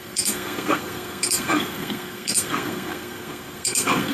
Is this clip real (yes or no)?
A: no